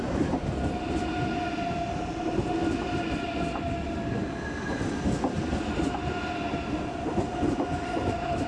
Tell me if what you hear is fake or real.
real